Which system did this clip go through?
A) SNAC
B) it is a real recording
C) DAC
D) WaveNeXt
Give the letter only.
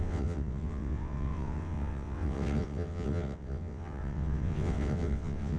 D